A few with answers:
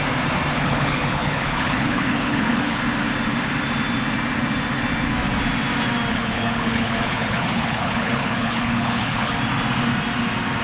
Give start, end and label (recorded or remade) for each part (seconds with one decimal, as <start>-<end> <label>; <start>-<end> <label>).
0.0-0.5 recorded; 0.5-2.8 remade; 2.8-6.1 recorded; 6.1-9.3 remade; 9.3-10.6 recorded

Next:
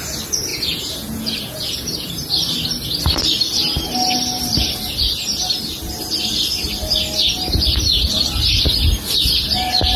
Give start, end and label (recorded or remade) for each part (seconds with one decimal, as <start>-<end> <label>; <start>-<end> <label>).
0.0-0.5 recorded; 0.5-2.1 remade; 2.1-10.0 recorded

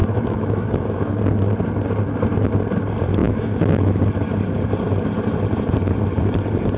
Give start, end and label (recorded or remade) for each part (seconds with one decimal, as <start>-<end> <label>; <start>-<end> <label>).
0.0-1.2 remade; 1.2-3.2 recorded; 3.2-4.0 remade; 4.0-6.8 recorded

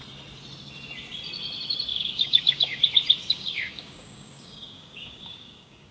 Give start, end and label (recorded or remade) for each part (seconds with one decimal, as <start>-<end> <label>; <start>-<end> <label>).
0.0-1.9 recorded; 1.9-2.8 remade; 2.8-3.2 recorded; 3.2-5.9 remade

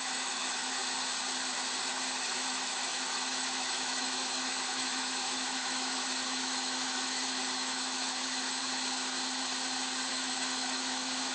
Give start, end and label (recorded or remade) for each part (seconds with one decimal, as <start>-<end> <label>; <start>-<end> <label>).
0.0-0.8 remade; 0.8-1.9 recorded; 1.9-8.6 remade; 8.6-10.1 recorded; 10.1-11.3 remade